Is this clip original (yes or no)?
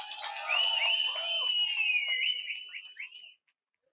yes